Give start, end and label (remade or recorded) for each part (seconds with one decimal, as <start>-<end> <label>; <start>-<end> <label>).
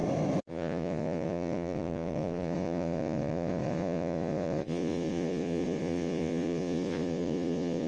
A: 0.0-0.5 recorded; 0.5-7.9 remade